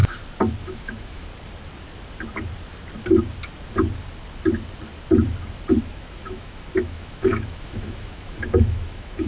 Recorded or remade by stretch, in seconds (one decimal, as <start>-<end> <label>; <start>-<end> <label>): 0.0-0.6 recorded; 0.6-1.3 remade; 1.3-5.8 recorded; 5.8-9.3 remade